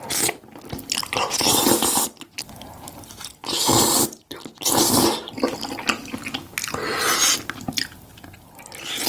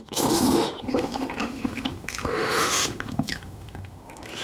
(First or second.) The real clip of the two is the first